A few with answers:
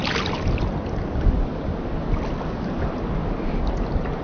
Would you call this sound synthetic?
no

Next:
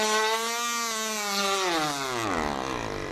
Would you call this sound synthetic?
no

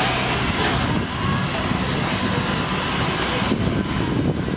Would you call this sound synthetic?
no